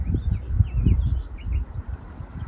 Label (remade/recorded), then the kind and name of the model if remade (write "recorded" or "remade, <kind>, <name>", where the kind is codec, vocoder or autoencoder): recorded